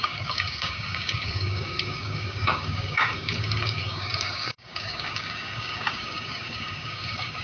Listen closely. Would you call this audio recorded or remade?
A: remade